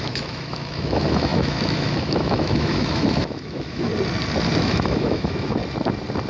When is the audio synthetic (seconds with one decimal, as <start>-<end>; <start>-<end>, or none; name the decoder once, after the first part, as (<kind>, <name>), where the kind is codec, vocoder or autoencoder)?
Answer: 0.0-3.9 (autoencoder, DAC-VAE); 4.6-5.6